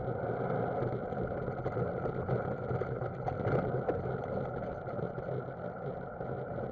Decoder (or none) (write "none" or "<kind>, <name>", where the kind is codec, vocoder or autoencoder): none